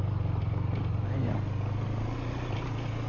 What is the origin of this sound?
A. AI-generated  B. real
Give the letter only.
B